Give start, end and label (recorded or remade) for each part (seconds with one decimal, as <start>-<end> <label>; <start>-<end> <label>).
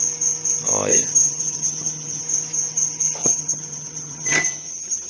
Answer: 0.0-0.9 recorded; 0.9-2.2 remade; 2.2-3.2 recorded; 3.2-5.1 remade